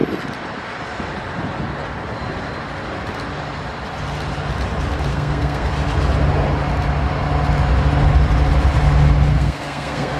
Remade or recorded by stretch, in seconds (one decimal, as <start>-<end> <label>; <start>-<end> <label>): 0.0-5.1 recorded; 5.1-5.7 remade; 5.7-9.3 recorded; 9.3-10.2 remade